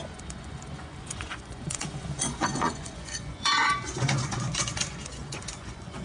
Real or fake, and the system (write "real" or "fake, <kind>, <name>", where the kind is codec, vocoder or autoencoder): fake, vocoder, Vocos